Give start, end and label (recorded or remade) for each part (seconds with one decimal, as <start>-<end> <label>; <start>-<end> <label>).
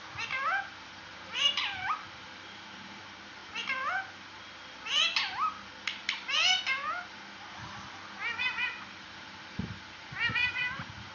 0.0-1.1 recorded; 1.1-3.0 remade; 3.0-8.2 recorded; 8.2-11.1 remade